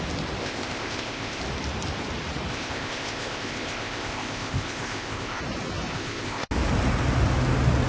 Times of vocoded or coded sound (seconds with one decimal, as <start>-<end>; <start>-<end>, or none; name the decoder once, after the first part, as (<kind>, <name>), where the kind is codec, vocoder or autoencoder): 0.4-1.4 (codec, ZipCodec); 2.5-5.4; 5.9-6.5